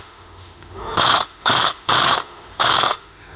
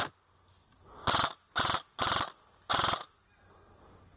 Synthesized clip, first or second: first